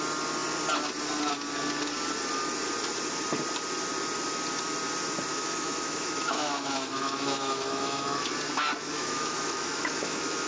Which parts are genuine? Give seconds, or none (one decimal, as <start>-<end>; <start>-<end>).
0.0-5.3; 8.3-8.8